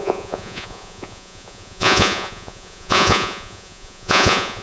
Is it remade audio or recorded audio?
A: remade